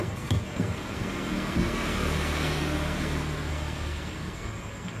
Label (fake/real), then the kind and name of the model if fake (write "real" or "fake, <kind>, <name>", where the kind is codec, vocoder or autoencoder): fake, codec, SNAC